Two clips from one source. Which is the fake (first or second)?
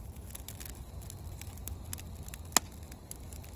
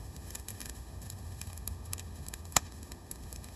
second